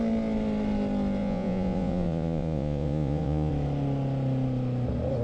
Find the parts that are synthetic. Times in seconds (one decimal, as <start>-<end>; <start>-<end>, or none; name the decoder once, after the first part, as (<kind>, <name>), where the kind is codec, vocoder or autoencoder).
1.2-3.5 (vocoder, Vocos)